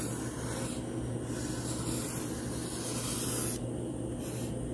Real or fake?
real